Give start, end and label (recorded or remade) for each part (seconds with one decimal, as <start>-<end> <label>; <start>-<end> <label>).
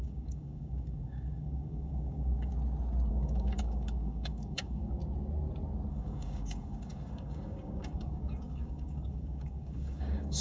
0.0-2.5 remade; 2.5-3.1 recorded; 3.1-5.0 remade; 5.0-5.9 recorded; 5.9-10.4 remade